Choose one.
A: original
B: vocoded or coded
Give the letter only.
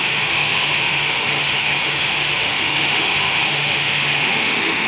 B